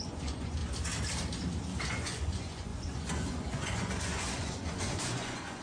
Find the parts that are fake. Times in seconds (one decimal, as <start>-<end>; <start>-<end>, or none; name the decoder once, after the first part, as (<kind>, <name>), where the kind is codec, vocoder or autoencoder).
0.0-0.6 (vocoder, Vocos); 1.9-5.6